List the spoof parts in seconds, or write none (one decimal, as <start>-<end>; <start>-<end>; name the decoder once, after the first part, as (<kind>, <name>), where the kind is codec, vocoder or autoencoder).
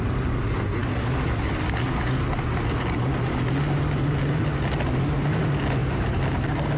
none